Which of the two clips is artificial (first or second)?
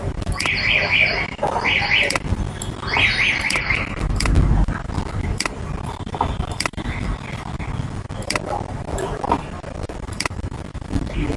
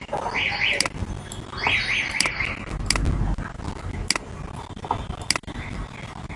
first